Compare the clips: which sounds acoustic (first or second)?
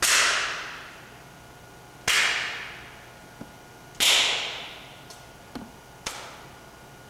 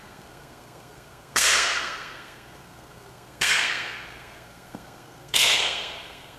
first